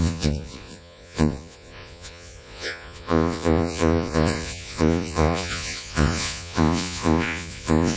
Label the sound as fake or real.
fake